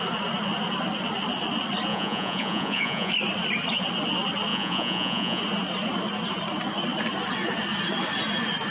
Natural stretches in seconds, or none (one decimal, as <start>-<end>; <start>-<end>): 0.0-1.9; 3.1-4.5; 5.4-8.7